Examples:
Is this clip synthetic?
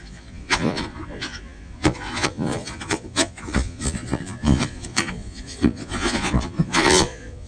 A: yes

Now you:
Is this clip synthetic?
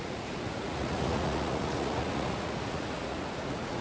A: yes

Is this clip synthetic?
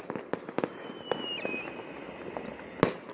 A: no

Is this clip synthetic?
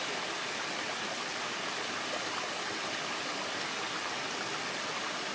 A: no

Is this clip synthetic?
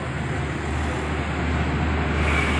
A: no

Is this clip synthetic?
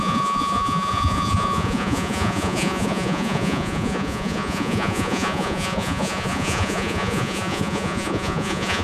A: yes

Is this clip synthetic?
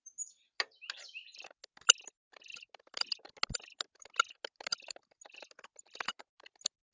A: no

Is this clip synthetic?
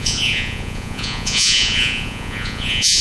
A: yes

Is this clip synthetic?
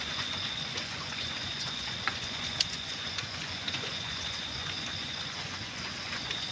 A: yes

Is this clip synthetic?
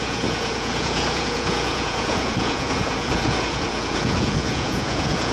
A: yes